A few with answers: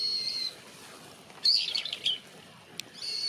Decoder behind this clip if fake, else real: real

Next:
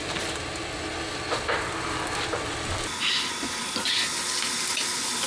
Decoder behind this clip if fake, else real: real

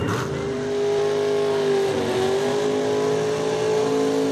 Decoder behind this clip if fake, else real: real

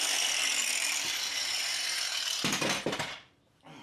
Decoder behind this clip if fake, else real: real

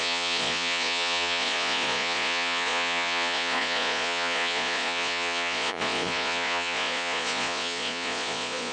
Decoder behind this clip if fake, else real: fake, vocoder, Vocos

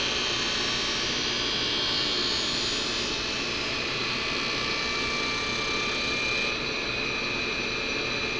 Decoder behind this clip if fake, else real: real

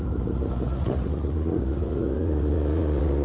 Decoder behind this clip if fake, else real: fake, vocoder, Vocos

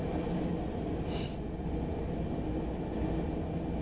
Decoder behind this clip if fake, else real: real